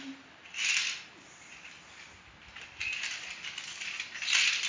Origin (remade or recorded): recorded